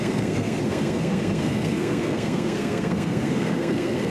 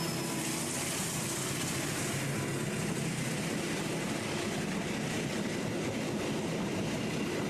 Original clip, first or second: second